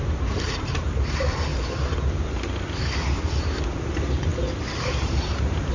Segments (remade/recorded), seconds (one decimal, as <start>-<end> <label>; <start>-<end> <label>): 0.0-1.5 remade; 1.5-3.4 recorded; 3.4-4.3 remade; 4.3-4.8 recorded; 4.8-5.7 remade